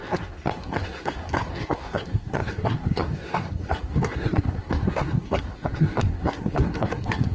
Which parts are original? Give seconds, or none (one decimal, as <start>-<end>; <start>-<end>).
none